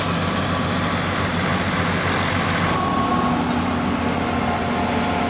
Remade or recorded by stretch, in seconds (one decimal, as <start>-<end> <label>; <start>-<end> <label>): 0.0-5.3 recorded